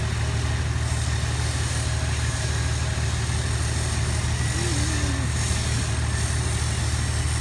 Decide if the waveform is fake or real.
real